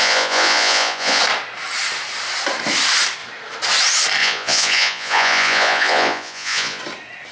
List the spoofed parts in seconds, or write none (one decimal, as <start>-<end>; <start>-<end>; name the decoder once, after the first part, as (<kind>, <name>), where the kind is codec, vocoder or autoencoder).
0.0-1.2 (vocoder, Vocos); 4.2-6.8